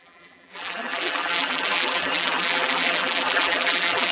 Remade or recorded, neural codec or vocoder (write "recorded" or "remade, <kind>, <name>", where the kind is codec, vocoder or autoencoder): remade, vocoder, BigVGAN v2